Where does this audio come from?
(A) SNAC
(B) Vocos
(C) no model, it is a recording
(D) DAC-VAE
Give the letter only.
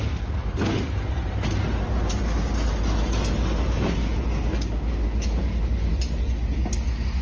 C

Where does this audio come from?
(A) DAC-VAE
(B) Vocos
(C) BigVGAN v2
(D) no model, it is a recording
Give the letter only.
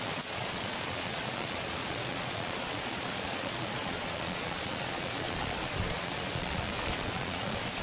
B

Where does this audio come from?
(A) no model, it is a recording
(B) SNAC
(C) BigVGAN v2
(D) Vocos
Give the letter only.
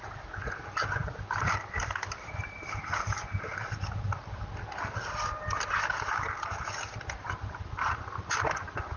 A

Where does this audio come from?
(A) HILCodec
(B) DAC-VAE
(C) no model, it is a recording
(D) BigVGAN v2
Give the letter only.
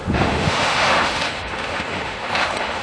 B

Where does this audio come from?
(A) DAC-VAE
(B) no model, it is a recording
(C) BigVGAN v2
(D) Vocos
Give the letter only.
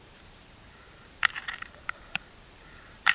C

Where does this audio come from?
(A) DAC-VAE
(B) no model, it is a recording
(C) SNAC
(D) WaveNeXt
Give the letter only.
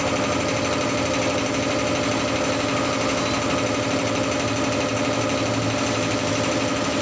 B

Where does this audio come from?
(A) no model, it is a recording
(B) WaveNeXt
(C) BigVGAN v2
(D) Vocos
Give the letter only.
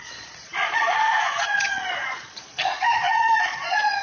D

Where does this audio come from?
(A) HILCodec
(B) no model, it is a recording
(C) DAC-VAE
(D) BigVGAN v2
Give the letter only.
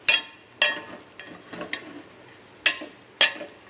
B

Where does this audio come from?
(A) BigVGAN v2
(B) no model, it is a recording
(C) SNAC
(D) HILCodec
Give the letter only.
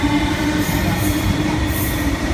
A